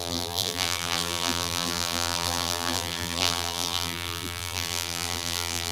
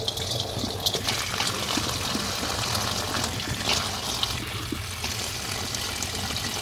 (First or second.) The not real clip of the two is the first